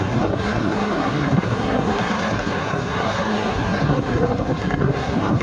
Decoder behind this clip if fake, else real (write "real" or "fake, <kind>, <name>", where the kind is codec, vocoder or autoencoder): fake, codec, SNAC